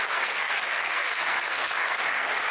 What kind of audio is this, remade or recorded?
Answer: remade